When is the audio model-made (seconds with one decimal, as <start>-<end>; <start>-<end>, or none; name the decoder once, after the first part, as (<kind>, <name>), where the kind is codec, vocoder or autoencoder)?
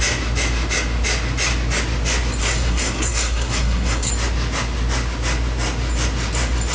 2.4-4.1 (codec, SNAC)